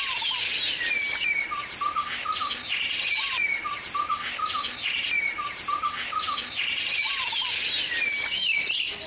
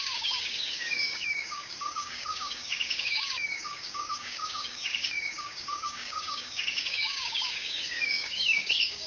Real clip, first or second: first